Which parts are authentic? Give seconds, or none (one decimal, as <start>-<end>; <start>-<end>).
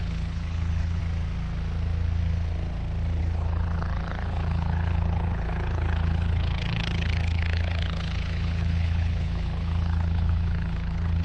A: 1.0-3.2